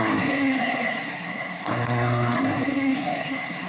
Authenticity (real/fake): fake